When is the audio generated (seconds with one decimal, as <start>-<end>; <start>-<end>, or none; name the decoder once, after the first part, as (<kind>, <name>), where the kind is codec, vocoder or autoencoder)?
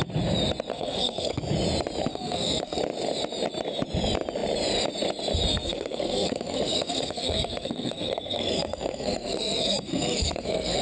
0.7-1.4 (codec, SNAC); 2.1-2.8; 5.5-10.8